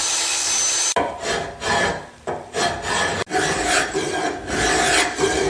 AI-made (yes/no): no